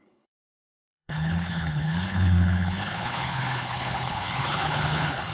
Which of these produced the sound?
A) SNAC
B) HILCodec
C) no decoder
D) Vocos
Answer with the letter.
B